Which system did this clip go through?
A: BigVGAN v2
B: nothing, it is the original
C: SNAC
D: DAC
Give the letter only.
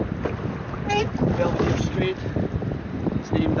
B